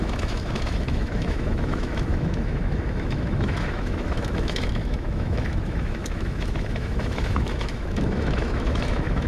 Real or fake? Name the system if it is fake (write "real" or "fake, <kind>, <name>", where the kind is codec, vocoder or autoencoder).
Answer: fake, autoencoder, DAC-VAE